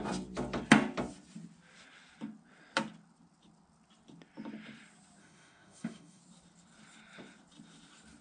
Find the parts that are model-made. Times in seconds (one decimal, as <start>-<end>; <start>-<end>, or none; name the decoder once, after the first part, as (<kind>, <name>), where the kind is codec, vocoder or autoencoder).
5.2-6.2 (autoencoder, DAC-VAE)